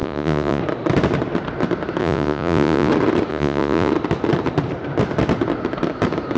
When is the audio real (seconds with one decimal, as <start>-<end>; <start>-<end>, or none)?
0.6-2.0; 2.9-3.3; 3.9-6.4